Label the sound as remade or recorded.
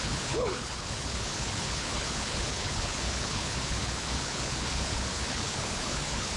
remade